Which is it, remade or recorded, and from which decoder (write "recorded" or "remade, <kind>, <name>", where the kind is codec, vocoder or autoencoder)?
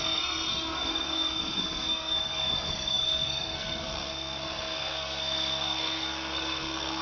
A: remade, codec, SNAC